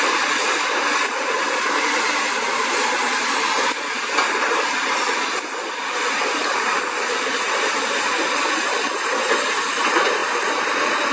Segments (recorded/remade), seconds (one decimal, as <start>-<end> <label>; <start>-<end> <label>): 0.0-11.1 recorded